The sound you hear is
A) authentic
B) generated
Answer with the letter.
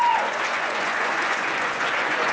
B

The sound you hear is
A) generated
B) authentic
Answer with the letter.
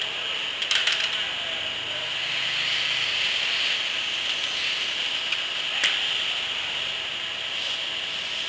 B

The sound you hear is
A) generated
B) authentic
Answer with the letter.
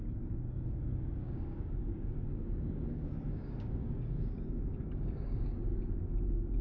A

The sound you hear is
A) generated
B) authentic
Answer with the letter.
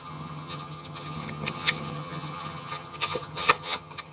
A